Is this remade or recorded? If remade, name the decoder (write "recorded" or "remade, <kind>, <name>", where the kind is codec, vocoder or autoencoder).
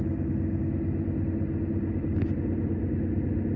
recorded